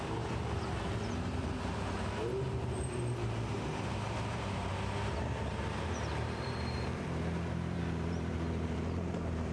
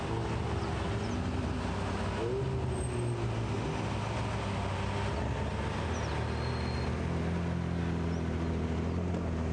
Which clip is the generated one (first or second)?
first